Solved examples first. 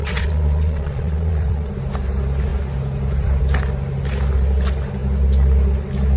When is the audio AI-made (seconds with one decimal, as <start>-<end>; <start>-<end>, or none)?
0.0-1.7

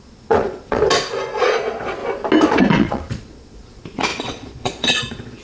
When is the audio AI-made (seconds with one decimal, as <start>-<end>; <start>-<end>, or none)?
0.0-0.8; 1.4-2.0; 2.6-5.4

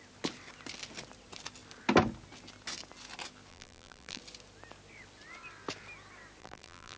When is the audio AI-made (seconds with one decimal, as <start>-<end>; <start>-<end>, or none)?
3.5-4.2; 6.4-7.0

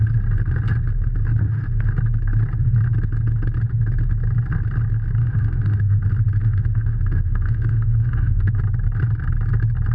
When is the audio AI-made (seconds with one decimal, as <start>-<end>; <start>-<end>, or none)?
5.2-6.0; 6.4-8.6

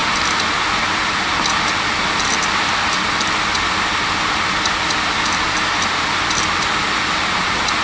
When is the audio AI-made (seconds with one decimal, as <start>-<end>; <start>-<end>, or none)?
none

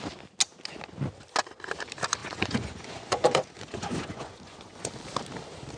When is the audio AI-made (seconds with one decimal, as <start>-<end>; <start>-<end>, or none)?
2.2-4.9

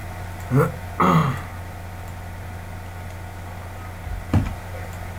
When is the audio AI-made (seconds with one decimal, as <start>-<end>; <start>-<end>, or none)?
none